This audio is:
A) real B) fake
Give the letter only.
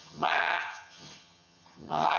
B